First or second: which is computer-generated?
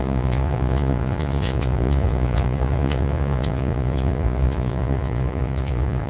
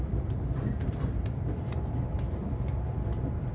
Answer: first